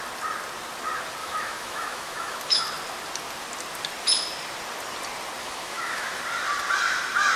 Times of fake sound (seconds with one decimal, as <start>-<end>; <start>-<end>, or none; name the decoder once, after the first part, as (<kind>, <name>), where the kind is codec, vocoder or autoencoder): 1.2-2.6 (autoencoder, DAC-VAE); 5.4-6.2

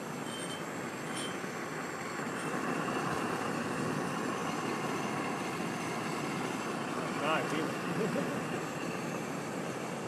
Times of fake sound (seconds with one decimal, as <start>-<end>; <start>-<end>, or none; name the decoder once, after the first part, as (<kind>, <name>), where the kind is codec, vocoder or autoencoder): none

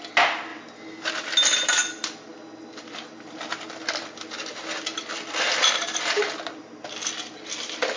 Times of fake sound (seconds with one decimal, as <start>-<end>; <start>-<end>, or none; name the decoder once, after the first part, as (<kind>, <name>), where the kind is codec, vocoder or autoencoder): none

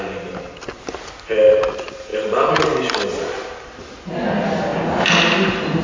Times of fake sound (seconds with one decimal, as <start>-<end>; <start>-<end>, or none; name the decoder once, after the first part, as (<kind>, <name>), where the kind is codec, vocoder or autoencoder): none